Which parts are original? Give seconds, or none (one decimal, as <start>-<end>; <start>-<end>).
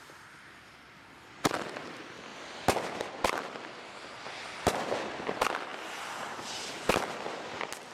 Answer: 0.0-7.9